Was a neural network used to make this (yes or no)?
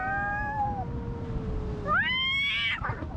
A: no